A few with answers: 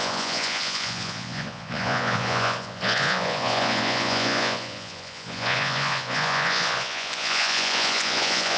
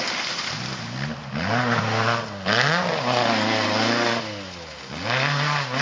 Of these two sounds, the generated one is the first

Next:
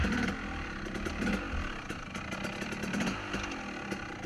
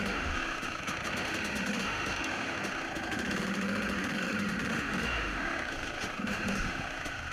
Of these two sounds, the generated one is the second